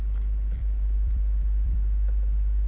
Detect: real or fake fake